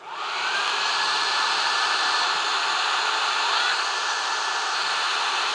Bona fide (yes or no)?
yes